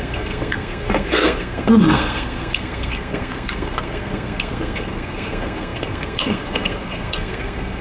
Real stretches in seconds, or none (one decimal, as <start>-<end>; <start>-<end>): none